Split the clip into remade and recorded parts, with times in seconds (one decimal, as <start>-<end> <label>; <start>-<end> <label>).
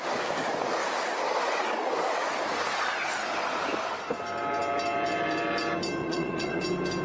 0.0-6.0 recorded; 6.0-6.6 remade; 6.6-7.0 recorded